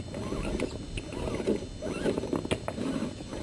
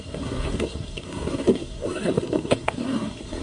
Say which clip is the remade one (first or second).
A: second